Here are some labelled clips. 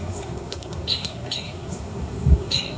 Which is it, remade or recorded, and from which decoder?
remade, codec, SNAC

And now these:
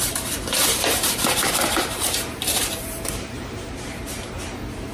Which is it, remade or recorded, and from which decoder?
remade, vocoder, BigVGAN v2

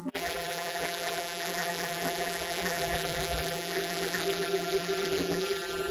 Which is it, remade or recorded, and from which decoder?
remade, vocoder, BigVGAN v2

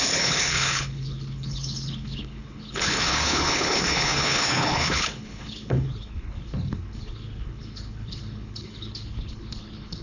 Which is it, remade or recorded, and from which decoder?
remade, codec, HILCodec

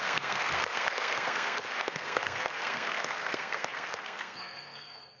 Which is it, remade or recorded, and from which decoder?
remade, codec, SNAC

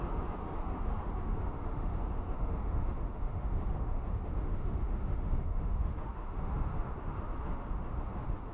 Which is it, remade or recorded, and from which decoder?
remade, autoencoder, DAC-VAE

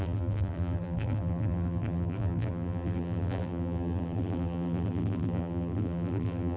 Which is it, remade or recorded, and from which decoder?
remade, vocoder, BigVGAN v2